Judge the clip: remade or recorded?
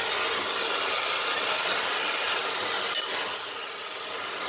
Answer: recorded